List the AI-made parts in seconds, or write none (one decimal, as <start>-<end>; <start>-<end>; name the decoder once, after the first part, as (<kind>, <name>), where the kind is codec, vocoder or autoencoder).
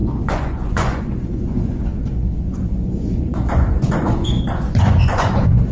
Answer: 0.0-5.7 (vocoder, Vocos)